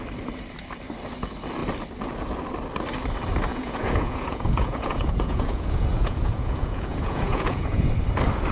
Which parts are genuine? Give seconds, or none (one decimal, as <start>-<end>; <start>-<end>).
0.0-3.5; 7.9-8.5